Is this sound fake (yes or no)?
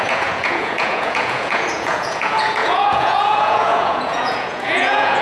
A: yes